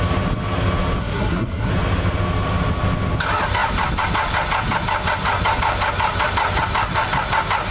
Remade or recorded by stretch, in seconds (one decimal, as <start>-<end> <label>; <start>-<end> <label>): 0.0-1.0 recorded; 1.0-1.7 remade; 1.7-7.7 recorded